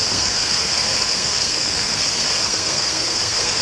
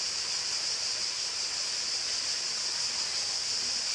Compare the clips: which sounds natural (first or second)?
second